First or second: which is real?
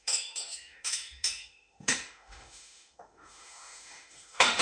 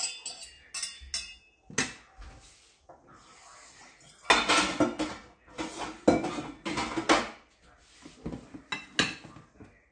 second